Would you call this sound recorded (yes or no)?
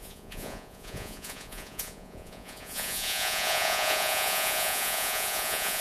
no